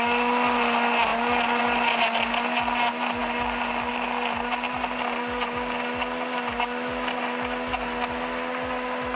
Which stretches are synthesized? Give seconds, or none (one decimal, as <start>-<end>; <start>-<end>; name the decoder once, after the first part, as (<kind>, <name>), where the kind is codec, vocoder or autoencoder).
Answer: none